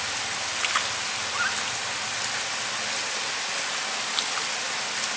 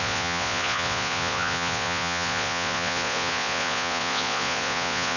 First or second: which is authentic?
first